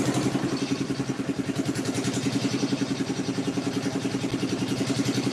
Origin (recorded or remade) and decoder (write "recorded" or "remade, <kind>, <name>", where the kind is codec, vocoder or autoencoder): recorded